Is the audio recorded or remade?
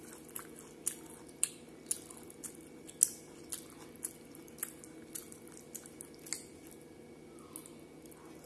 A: recorded